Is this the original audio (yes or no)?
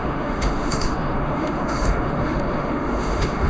no